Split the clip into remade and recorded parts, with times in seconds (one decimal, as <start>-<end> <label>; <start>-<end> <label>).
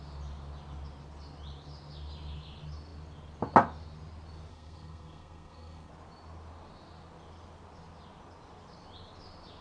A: 0.0-4.5 recorded; 4.5-5.9 remade; 5.9-9.6 recorded